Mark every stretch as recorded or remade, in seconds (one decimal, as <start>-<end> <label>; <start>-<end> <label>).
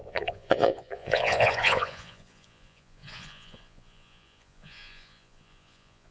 0.0-6.1 remade